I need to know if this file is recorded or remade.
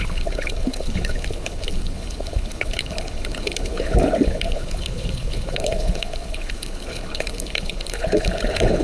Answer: remade